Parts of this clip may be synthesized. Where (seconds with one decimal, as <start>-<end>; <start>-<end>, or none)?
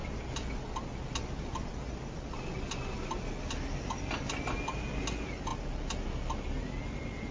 none